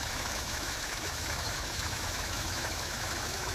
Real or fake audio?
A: fake